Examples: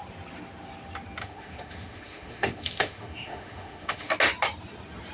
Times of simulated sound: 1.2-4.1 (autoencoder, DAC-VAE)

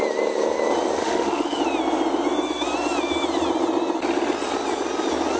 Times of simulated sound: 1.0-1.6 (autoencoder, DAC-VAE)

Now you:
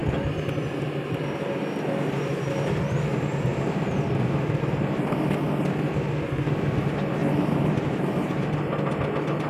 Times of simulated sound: 0.0-1.6 (vocoder, BigVGAN v2); 3.1-5.1; 7.2-8.5